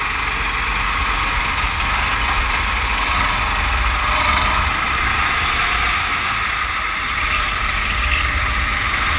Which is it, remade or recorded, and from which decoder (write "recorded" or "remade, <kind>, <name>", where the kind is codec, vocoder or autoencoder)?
recorded